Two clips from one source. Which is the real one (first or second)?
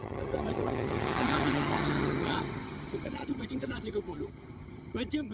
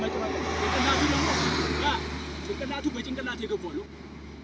second